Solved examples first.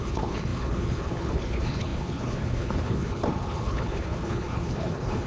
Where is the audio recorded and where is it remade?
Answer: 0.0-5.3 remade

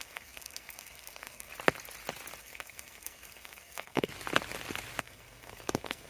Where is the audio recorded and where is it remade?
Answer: 0.0-1.5 remade; 1.5-2.4 recorded; 2.4-4.1 remade; 4.1-5.0 recorded; 5.0-6.1 remade

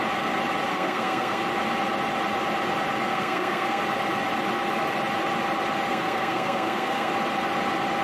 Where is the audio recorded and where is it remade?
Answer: 0.0-0.7 recorded; 0.7-1.4 remade; 1.4-3.1 recorded; 3.1-3.8 remade; 3.8-5.9 recorded; 5.9-7.1 remade; 7.1-8.0 recorded

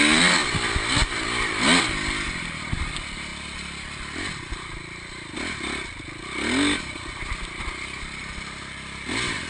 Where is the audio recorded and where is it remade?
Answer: 0.0-9.5 recorded